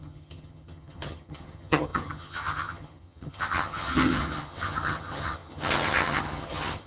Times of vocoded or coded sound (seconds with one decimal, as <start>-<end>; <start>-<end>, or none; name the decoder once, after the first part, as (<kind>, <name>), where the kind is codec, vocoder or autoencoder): 0.0-6.9 (vocoder, HiFi-GAN)